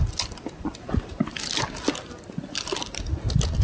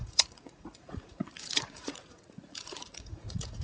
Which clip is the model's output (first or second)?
second